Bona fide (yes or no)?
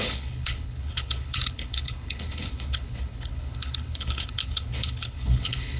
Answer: no